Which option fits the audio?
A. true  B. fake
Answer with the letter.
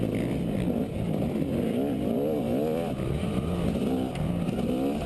A